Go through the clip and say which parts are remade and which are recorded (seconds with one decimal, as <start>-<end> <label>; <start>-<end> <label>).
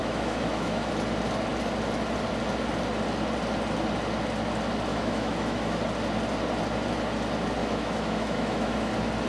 0.0-0.9 remade; 0.9-4.9 recorded; 4.9-5.8 remade; 5.8-7.6 recorded; 7.6-8.9 remade; 8.9-9.3 recorded